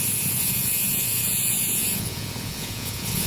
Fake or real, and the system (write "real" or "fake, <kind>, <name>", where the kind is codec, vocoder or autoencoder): fake, vocoder, Vocos